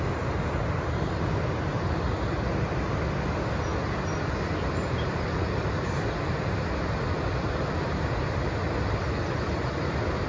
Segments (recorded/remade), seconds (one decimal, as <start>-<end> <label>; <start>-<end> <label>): 0.0-10.3 recorded